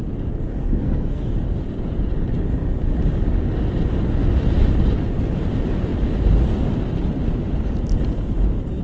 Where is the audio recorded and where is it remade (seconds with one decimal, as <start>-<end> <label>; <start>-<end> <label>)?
0.0-0.5 recorded; 0.5-1.3 remade; 1.3-8.8 recorded